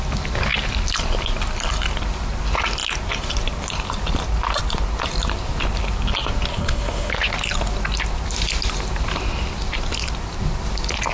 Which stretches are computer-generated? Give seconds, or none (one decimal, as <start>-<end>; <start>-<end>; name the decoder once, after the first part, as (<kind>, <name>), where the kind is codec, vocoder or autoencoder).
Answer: 6.5-7.1 (codec, HILCodec)